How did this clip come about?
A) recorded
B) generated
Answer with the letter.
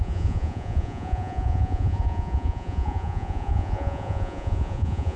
B